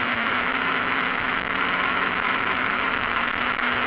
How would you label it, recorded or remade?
remade